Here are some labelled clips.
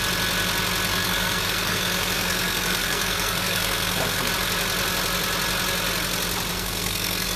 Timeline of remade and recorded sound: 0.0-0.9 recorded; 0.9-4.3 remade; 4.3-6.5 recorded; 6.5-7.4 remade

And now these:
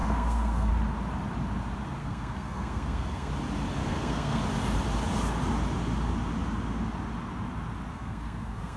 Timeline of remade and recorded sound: 0.0-0.7 remade; 0.7-2.0 recorded; 2.0-3.3 remade; 3.3-3.8 recorded; 3.8-4.4 remade; 4.4-7.9 recorded; 7.9-8.8 remade

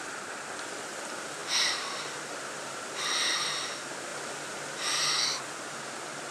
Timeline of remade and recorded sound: 0.0-6.3 recorded

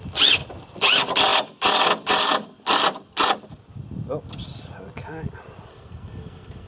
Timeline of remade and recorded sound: 0.0-5.7 recorded; 5.7-6.7 remade

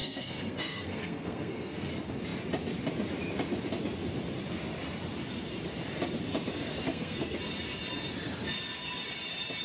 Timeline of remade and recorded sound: 0.0-1.9 remade; 1.9-6.9 recorded; 6.9-7.4 remade; 7.4-9.6 recorded

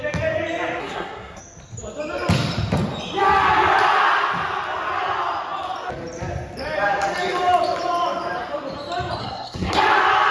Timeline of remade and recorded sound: 0.0-0.8 recorded; 0.8-1.4 remade; 1.4-9.2 recorded; 9.2-9.8 remade; 9.8-10.3 recorded

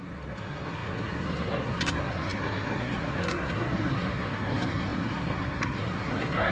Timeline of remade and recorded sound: 0.0-6.5 remade

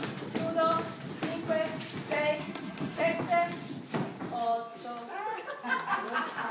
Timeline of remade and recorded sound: 0.0-2.4 recorded; 2.4-3.0 remade; 3.0-6.5 recorded